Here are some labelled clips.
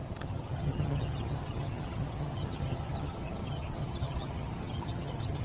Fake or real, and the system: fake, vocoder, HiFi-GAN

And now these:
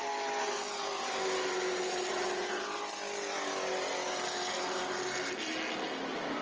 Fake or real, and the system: real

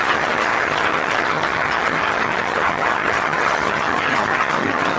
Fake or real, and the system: fake, vocoder, HiFi-GAN